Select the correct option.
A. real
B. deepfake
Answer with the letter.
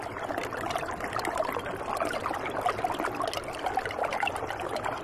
A